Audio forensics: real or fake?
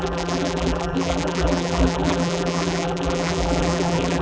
fake